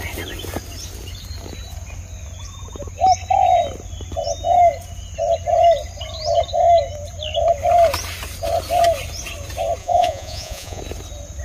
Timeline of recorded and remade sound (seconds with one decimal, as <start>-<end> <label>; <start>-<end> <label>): 0.0-9.8 recorded; 9.8-10.8 remade; 10.8-11.4 recorded